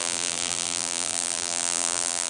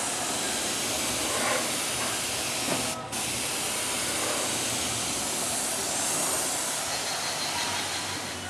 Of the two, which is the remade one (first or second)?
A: first